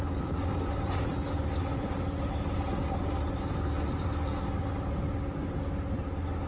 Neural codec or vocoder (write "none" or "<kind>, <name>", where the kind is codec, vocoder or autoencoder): none